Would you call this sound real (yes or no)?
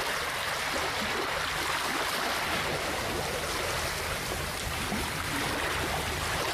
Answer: yes